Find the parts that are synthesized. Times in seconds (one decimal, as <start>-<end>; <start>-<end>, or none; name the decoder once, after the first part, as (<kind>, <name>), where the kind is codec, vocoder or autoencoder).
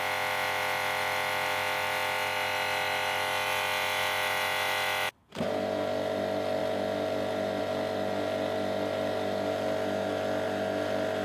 none